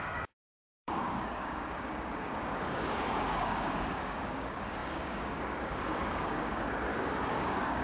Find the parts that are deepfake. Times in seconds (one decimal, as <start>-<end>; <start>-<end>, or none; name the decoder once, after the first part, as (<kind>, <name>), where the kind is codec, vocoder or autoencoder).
0.0-7.8 (codec, DAC)